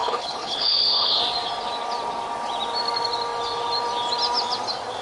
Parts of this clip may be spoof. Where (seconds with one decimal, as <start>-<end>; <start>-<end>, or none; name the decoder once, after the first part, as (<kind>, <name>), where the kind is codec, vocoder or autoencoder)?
0.0-1.2 (codec, HILCodec)